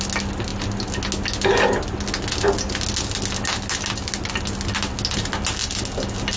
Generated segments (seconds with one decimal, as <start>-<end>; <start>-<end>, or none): none